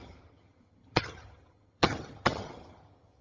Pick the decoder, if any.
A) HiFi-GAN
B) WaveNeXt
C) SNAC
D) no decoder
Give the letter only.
A